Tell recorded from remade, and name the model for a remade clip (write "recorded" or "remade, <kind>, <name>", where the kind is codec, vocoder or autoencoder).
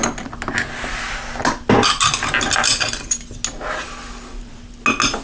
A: recorded